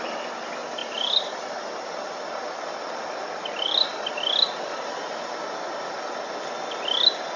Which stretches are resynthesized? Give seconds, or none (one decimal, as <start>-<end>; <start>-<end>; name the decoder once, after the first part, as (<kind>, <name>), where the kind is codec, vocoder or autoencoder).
0.8-1.3 (vocoder, BigVGAN v2)